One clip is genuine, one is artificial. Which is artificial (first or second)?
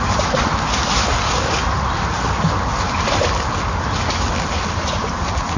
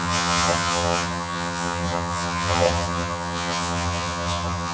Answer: second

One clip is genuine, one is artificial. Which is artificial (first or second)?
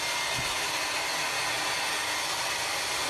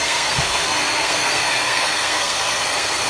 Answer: second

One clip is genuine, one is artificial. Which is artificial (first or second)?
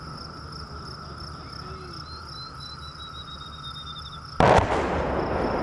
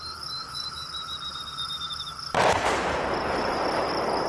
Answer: second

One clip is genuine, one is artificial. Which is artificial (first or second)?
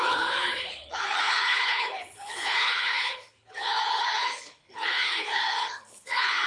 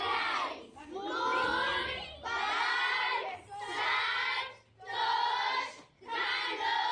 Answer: first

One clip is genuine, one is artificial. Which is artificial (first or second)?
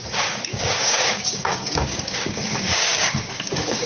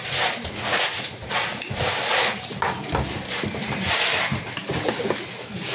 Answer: first